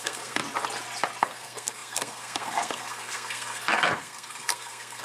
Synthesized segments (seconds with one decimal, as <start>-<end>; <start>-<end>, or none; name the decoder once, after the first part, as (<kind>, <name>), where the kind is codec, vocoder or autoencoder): 0.0-0.4 (codec, SNAC); 1.2-5.0